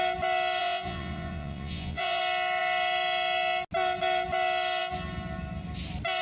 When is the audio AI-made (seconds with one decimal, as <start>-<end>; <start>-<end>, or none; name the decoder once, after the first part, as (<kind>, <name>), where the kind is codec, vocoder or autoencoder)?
0.6-2.2 (vocoder, Vocos)